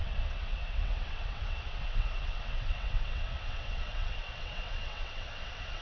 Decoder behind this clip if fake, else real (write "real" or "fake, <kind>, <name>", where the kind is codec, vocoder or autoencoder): fake, vocoder, WaveNeXt